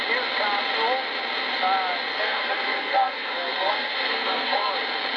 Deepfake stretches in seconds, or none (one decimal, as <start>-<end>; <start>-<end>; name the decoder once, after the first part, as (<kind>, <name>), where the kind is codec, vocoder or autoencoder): 2.1-4.7 (codec, SNAC)